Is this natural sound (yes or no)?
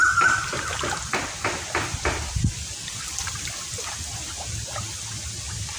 yes